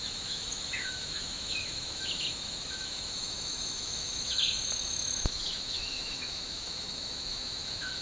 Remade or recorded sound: remade